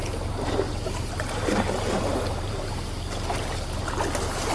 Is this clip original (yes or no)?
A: yes